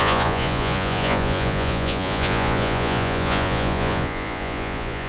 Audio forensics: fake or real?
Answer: fake